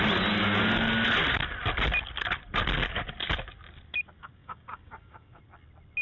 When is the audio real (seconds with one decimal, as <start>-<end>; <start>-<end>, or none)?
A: 0.0-4.4; 5.4-6.0